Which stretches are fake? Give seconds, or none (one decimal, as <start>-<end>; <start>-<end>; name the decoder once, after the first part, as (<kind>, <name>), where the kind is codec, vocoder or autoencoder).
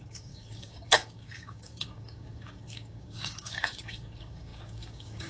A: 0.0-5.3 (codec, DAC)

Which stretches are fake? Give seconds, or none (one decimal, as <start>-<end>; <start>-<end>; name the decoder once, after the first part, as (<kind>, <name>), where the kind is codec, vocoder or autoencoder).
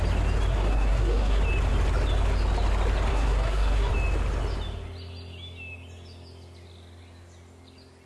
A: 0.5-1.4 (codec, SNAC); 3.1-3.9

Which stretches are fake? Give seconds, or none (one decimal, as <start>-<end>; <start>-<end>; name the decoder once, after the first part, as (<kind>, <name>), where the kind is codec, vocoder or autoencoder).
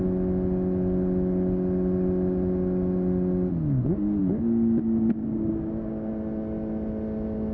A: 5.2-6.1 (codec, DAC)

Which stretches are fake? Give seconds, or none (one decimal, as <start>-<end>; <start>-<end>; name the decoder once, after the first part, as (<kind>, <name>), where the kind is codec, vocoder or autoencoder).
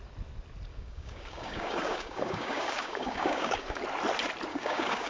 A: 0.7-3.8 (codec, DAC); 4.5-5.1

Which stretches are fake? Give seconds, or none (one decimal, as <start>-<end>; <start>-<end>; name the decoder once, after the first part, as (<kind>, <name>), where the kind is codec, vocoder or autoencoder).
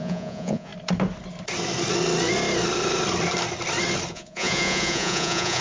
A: 0.0-0.7 (vocoder, Vocos); 4.1-5.6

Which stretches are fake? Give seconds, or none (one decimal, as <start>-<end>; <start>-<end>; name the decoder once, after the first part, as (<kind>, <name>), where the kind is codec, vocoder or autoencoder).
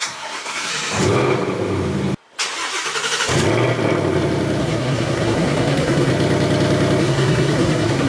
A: 0.0-0.7 (codec, SNAC); 4.6-6.1; 7.0-8.1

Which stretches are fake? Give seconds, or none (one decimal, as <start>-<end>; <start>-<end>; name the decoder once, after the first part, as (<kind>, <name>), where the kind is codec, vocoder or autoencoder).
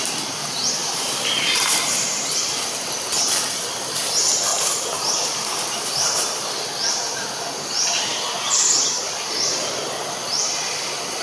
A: 0.8-2.7 (vocoder, BigVGAN v2); 4.5-6.5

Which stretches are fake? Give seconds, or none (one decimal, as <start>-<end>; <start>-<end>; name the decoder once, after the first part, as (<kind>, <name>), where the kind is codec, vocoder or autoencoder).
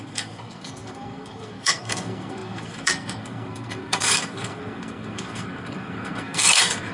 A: 0.0-6.9 (codec, SNAC)